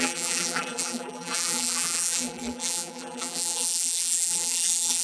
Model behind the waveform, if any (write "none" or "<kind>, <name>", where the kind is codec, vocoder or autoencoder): vocoder, BigVGAN v2